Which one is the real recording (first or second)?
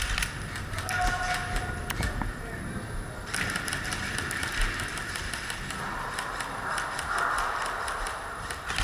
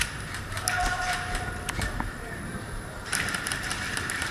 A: first